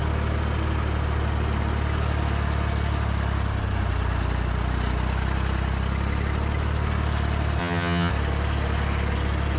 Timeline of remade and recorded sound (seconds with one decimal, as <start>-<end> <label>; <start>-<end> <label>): 0.0-7.6 recorded; 7.6-8.1 remade; 8.1-9.6 recorded